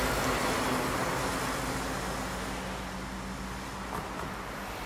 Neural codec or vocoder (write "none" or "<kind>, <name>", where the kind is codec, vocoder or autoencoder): none